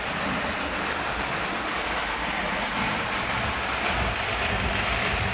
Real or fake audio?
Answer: real